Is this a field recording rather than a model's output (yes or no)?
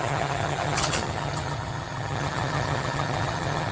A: no